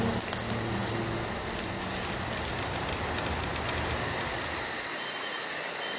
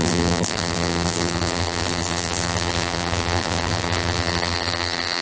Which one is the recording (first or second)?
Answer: first